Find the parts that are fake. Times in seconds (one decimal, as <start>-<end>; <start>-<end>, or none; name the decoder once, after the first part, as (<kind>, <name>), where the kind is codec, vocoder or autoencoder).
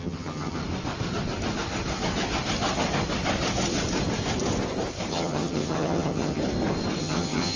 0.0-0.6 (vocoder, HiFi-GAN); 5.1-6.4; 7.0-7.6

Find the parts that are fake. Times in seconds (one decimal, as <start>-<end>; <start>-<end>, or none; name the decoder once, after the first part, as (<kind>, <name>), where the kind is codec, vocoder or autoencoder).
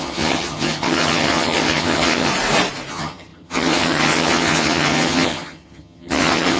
0.0-2.3 (vocoder, HiFi-GAN); 2.9-6.6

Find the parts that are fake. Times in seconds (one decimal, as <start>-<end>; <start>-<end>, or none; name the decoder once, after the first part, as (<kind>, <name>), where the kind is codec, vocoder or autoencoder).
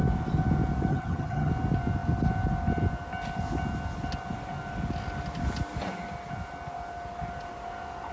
0.9-1.5 (vocoder, HiFi-GAN)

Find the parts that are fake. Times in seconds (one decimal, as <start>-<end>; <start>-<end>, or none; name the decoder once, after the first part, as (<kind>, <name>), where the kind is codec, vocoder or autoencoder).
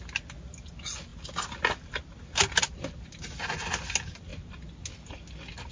none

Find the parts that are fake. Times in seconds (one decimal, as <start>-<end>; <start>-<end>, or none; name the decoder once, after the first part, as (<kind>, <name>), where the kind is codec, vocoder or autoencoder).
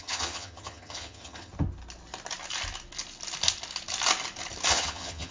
0.0-1.5 (vocoder, HiFi-GAN); 4.7-5.3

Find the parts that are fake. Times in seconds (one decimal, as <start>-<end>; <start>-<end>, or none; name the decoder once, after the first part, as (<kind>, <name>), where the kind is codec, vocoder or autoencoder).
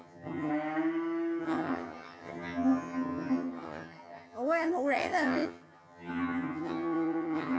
0.0-0.5 (vocoder, HiFi-GAN); 1.4-7.6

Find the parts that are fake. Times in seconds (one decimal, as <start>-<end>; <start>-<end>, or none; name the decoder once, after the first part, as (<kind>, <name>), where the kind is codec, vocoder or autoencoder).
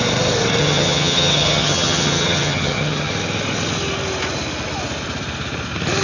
0.6-3.1 (vocoder, HiFi-GAN)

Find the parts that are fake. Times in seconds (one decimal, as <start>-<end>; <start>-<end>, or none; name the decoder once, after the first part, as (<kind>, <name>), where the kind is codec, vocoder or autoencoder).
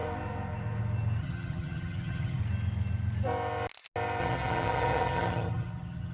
1.2-2.4 (vocoder, HiFi-GAN); 4.2-6.1